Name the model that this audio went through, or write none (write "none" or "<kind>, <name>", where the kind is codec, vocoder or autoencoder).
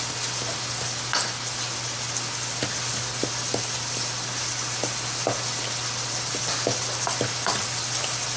none